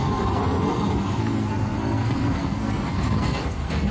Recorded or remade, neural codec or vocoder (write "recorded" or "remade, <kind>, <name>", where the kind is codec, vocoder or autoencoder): remade, codec, SNAC